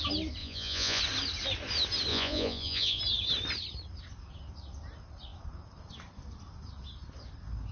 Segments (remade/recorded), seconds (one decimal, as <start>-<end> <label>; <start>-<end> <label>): 0.0-0.4 recorded; 0.4-1.0 remade; 1.0-2.1 recorded; 2.1-3.0 remade; 3.0-7.7 recorded